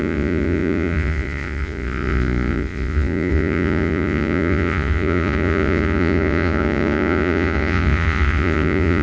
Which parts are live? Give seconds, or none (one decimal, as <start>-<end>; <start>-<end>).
none